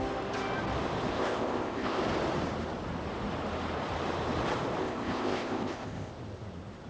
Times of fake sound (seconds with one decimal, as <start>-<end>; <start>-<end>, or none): 1.1-2.0; 4.8-6.1